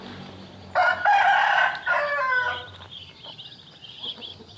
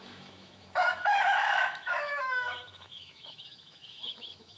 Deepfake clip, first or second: second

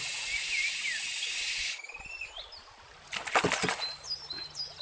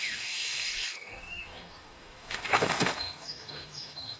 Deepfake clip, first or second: second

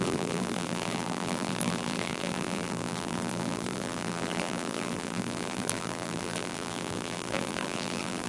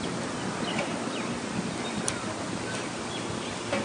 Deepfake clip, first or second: first